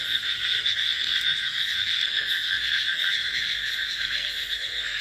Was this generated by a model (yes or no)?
yes